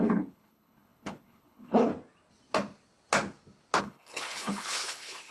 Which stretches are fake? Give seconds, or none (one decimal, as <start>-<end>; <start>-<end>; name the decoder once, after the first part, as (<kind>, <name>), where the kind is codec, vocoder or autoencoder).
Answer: 0.0-1.9 (codec, HILCodec); 3.8-5.3